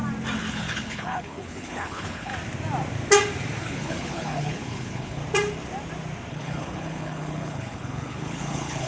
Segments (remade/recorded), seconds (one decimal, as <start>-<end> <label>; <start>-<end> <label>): 0.0-0.5 recorded; 0.5-2.3 remade; 2.3-3.6 recorded; 3.6-5.2 remade; 5.2-6.3 recorded; 6.3-8.9 remade